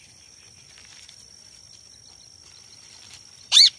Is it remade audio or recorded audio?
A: remade